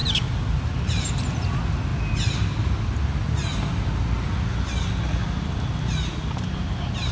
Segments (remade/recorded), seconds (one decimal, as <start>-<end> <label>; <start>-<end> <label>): 0.0-1.1 remade; 1.1-7.1 recorded